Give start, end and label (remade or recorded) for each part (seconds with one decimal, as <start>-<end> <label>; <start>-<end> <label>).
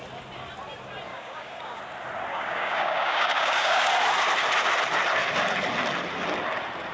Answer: 0.0-1.1 recorded; 1.1-1.8 remade; 1.8-2.3 recorded; 2.3-3.9 remade; 3.9-6.9 recorded